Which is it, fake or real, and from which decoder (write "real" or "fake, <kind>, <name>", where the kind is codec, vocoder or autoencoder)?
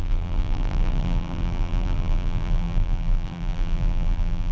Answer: fake, vocoder, BigVGAN v2